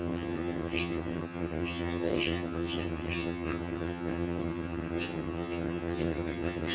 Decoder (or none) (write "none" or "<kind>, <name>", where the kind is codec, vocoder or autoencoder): vocoder, HiFi-GAN